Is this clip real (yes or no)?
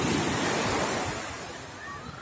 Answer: yes